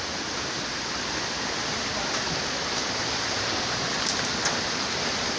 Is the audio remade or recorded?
recorded